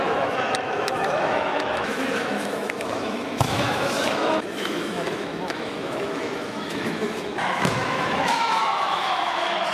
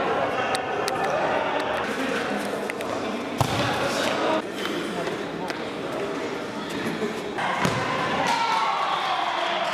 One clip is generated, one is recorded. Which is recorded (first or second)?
second